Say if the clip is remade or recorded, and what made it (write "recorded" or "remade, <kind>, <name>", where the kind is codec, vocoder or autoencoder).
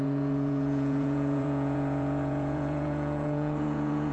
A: remade, vocoder, Vocos